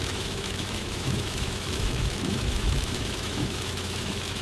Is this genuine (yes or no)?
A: no